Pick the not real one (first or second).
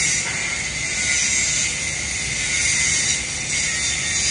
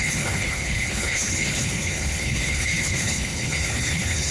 second